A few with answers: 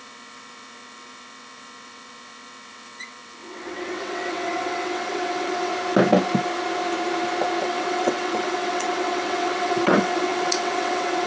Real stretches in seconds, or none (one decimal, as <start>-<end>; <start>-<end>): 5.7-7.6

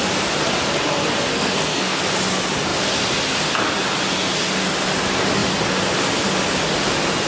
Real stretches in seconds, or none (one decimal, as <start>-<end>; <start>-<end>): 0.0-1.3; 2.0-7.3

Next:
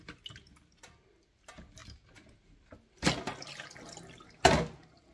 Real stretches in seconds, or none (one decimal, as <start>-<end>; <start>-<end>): 0.0-5.1